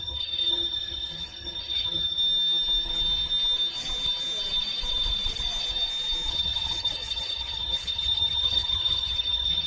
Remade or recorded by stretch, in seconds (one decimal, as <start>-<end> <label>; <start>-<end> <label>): 0.0-2.2 remade; 2.2-6.3 recorded; 6.3-9.7 remade